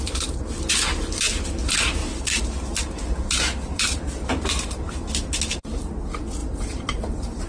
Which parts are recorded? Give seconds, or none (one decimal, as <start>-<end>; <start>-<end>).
0.0-2.0; 5.1-6.4